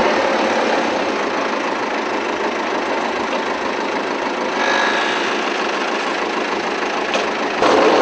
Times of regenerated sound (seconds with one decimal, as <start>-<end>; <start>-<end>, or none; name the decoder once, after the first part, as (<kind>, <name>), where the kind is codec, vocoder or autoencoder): none